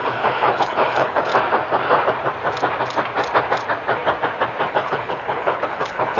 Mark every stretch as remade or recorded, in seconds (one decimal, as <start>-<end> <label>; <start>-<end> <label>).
0.0-1.3 remade; 1.3-4.7 recorded; 4.7-6.2 remade